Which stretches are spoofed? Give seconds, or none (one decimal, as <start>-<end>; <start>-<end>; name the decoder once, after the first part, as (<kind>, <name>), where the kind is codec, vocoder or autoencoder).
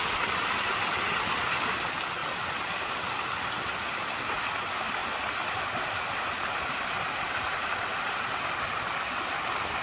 5.0-7.1 (vocoder, BigVGAN v2)